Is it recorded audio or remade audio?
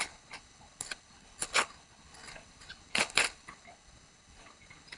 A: remade